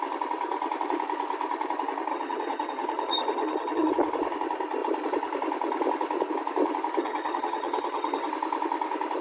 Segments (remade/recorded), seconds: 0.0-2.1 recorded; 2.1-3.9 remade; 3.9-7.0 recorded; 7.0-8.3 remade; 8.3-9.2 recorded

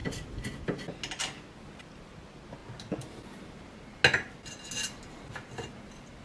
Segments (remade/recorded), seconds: 0.0-6.2 recorded